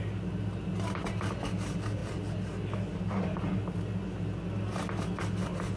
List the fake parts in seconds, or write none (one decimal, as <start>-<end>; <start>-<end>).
none